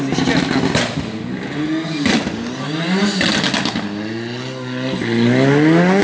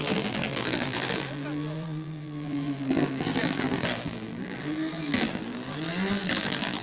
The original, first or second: first